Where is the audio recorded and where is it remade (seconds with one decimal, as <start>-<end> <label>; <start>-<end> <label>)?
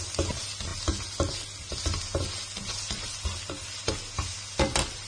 0.0-5.1 recorded